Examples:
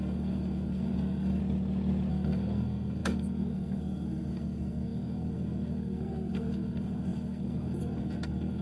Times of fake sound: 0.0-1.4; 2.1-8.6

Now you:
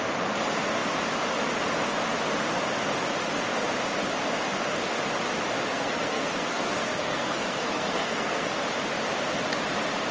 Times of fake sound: 5.7-8.5

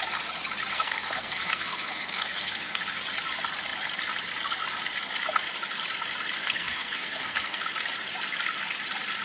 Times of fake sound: 0.7-2.8; 6.4-7.6

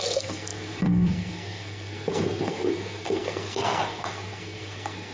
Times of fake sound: 0.0-5.1